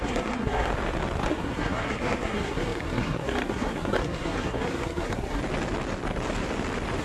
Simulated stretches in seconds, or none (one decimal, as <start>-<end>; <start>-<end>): 0.0-0.7; 1.3-5.4